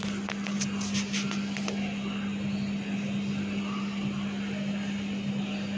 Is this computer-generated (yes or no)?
no